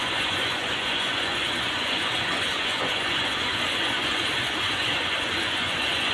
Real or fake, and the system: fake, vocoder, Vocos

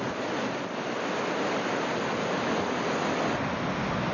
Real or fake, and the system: real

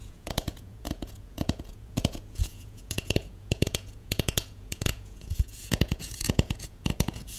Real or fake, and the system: fake, vocoder, Vocos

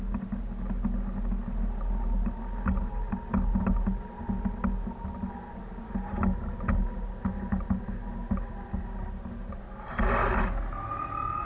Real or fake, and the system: real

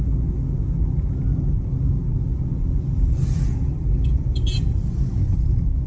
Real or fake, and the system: real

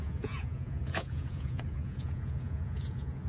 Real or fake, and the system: fake, vocoder, Vocos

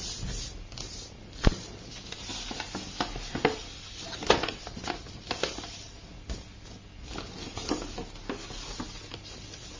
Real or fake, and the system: real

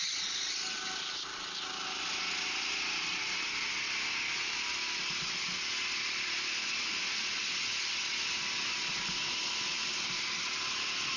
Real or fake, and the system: real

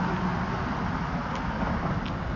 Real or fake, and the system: real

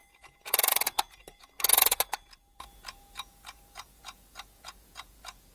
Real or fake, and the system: fake, vocoder, Vocos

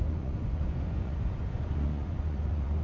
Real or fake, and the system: fake, vocoder, Vocos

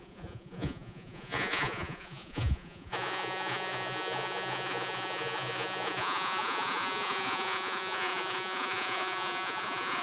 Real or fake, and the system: fake, vocoder, Vocos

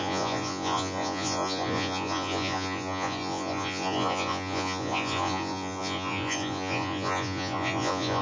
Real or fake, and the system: fake, vocoder, Vocos